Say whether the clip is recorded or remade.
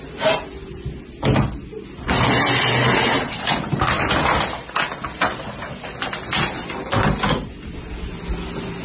recorded